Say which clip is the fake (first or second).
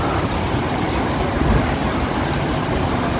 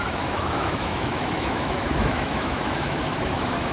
second